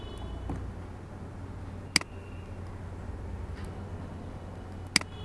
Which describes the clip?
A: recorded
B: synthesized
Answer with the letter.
A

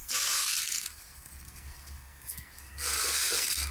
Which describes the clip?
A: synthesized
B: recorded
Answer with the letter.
A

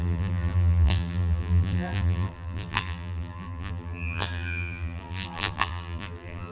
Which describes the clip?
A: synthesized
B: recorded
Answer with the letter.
A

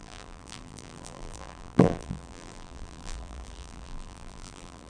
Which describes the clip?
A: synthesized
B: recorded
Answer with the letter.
A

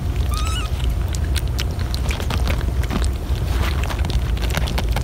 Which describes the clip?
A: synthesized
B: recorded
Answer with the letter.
B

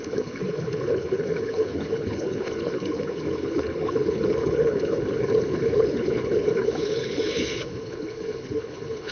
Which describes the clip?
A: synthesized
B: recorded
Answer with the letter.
A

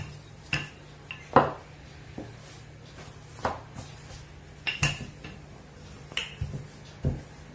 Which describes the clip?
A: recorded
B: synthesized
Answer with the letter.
A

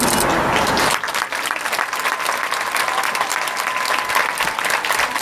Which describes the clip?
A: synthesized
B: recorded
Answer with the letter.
B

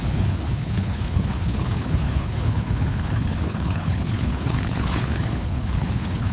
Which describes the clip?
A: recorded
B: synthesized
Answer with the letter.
B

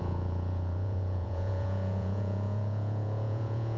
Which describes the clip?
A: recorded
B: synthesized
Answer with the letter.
B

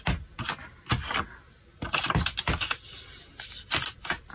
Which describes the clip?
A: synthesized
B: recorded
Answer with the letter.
B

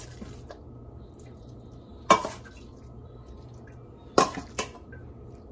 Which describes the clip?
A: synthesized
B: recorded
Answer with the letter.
B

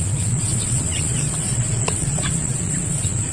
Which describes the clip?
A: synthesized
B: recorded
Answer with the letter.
A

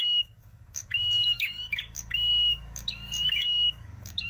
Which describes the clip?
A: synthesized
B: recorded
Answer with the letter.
A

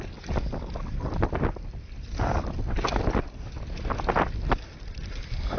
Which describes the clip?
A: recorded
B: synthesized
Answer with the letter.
A